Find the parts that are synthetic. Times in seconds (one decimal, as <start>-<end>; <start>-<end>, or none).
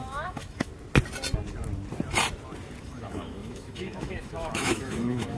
0.0-0.7; 2.8-5.4